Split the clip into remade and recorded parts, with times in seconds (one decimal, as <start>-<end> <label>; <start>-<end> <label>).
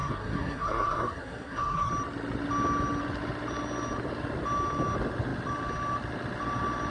0.0-1.9 remade; 1.9-6.9 recorded